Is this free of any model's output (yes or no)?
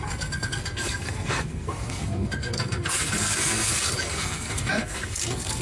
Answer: no